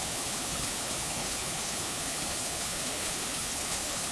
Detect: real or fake fake